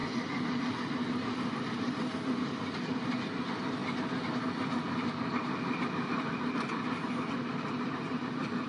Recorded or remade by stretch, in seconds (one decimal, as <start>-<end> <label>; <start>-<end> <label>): 0.0-8.7 recorded